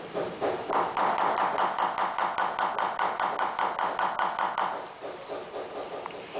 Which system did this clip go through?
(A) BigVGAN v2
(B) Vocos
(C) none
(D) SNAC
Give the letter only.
C